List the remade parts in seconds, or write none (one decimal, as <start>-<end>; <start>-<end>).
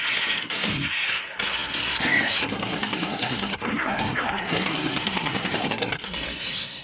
0.0-6.8